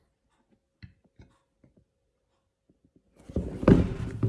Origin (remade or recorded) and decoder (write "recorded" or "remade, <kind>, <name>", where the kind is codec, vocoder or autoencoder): recorded